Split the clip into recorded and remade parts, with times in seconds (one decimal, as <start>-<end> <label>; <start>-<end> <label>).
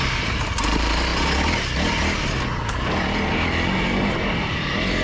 0.0-1.1 remade; 1.1-4.1 recorded; 4.1-5.0 remade